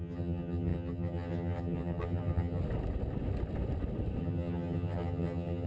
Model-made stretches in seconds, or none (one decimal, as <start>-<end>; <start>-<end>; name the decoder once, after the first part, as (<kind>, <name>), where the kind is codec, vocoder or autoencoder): 0.0-2.6 (vocoder, HiFi-GAN); 4.2-5.7